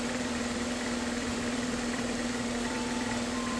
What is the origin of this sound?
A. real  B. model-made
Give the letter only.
B